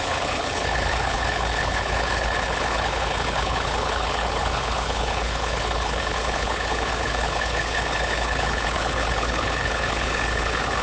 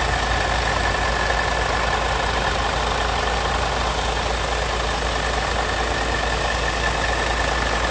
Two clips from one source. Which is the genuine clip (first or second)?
second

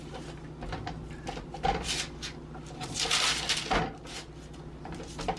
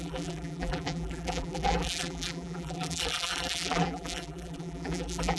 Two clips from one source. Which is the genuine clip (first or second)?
first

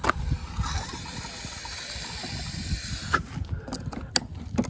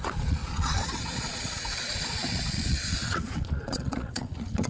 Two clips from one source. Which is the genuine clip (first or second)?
first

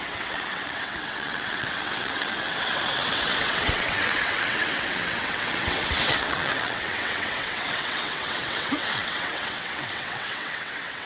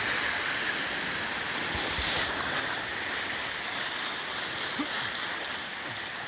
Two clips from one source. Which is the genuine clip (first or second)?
second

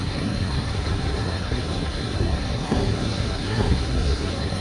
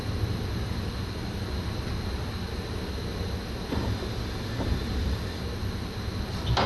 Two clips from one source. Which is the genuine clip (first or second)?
second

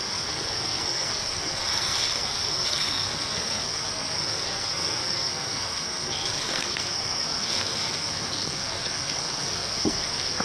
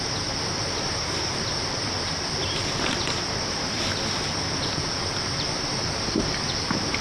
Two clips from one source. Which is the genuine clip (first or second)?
second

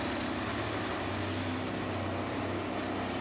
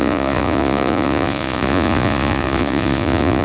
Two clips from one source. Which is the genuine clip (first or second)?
first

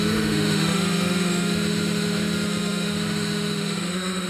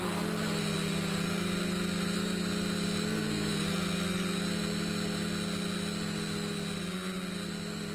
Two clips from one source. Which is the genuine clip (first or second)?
second